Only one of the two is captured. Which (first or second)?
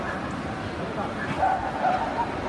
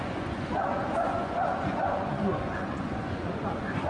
first